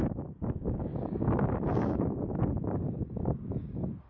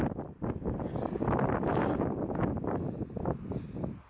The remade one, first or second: first